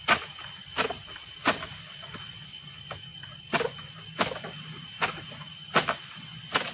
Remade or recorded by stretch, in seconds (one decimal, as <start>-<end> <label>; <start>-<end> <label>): 0.0-6.7 recorded